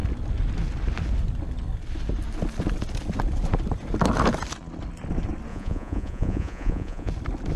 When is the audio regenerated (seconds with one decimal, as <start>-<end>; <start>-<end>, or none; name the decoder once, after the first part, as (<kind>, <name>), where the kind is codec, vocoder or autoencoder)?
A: 5.5-7.1 (vocoder, Vocos)